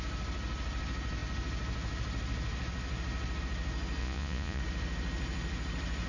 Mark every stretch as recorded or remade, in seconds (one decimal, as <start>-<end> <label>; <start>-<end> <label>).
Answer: 0.0-4.0 recorded; 4.0-4.6 remade; 4.6-6.1 recorded